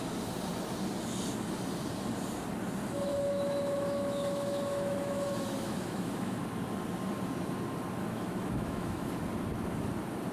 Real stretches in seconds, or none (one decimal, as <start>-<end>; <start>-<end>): 0.0-3.1; 6.4-8.0; 9.1-10.3